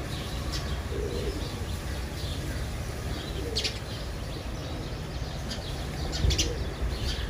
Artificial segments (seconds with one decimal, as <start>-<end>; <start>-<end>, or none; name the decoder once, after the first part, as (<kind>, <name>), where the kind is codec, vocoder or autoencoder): 0.0-1.4 (vocoder, BigVGAN v2); 2.3-3.5